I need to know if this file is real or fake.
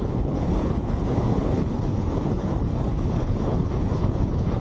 fake